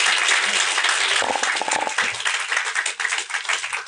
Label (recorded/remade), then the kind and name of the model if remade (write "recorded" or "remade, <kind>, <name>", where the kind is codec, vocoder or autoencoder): recorded